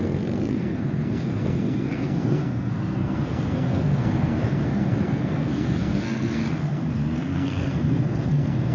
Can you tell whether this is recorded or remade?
remade